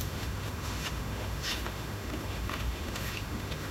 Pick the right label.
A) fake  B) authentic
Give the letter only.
A